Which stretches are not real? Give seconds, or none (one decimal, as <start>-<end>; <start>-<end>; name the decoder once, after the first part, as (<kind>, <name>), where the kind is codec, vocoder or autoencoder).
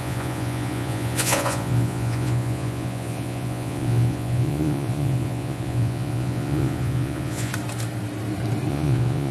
0.0-7.5 (vocoder, Vocos); 8.7-9.3